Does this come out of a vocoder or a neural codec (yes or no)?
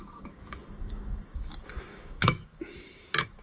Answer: yes